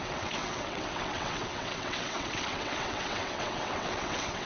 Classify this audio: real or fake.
fake